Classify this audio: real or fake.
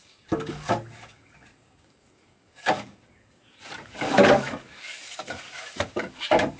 fake